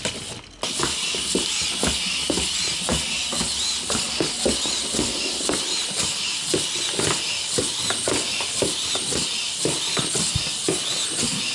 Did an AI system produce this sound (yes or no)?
no